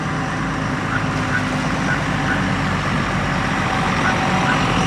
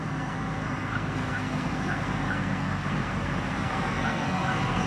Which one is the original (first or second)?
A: first